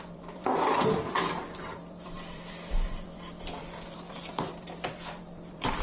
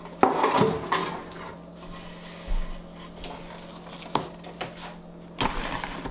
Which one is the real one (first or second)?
second